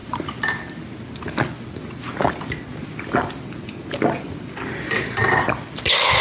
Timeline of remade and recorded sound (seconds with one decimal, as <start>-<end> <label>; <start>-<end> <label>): 0.0-6.2 recorded